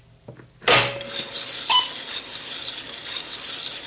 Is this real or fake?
real